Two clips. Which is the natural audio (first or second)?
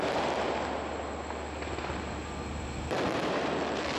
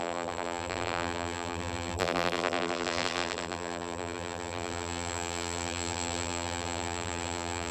first